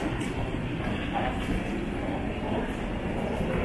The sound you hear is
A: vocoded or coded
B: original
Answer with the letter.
B